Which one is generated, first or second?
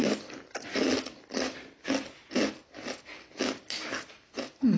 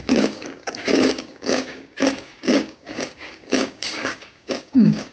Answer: second